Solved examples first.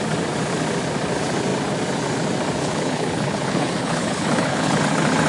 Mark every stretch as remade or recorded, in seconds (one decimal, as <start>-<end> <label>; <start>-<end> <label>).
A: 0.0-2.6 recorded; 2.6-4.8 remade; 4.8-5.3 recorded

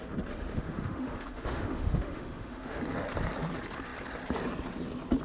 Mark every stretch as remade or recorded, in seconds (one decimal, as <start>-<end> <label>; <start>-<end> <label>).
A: 0.0-0.5 recorded; 0.5-2.8 remade; 2.8-5.2 recorded

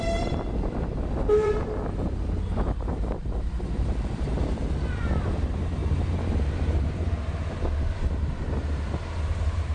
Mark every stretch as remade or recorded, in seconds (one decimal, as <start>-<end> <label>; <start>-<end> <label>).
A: 0.0-5.8 remade; 5.8-8.0 recorded; 8.0-9.7 remade